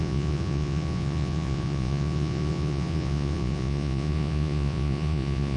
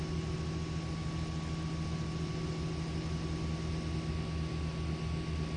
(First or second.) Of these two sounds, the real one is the second